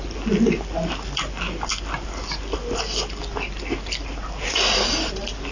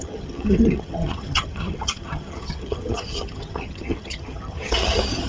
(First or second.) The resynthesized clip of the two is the second